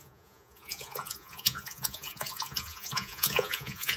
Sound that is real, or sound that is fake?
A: fake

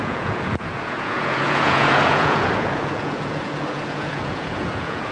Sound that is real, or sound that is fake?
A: fake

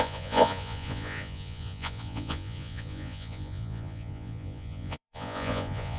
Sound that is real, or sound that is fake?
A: fake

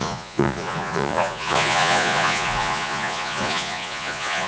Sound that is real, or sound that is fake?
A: fake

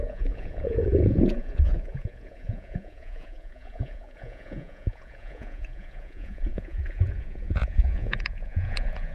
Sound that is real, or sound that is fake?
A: fake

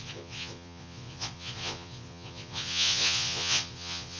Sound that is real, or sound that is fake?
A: fake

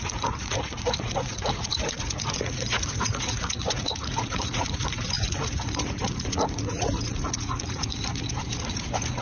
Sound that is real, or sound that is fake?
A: fake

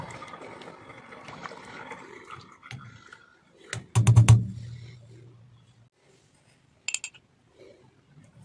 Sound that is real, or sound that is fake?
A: real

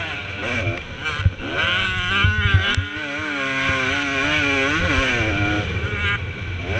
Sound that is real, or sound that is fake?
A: real